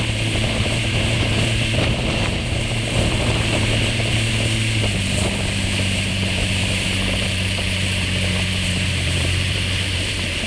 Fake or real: fake